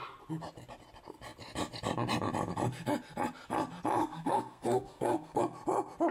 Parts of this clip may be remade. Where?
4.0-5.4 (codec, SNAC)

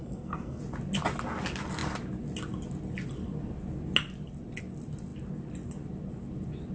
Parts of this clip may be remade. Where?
0.0-0.6 (codec, SNAC)

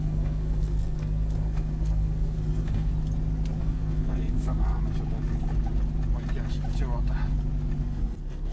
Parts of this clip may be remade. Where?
0.0-2.9 (codec, SNAC); 3.6-4.8; 7.8-8.5

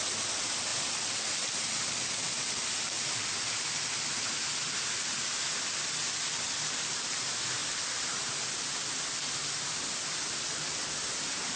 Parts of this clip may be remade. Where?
none

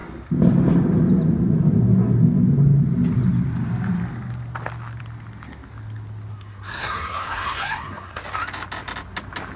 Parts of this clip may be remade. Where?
6.3-8.2 (codec, SNAC)

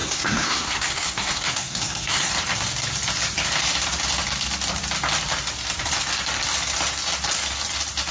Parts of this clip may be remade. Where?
0.0-2.3 (codec, SNAC)

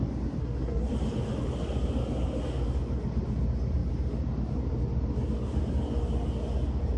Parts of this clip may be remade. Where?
0.4-0.9 (codec, SNAC)

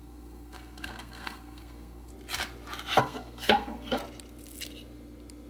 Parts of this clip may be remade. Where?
0.0-2.1 (codec, SNAC); 3.0-4.0